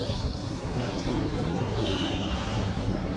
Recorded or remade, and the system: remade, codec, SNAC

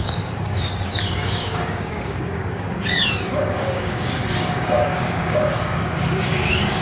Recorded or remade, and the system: remade, codec, DAC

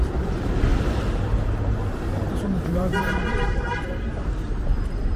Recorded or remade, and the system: remade, vocoder, BigVGAN v2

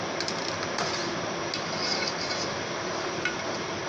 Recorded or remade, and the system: recorded